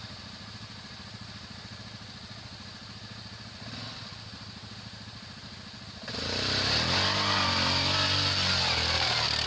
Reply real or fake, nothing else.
real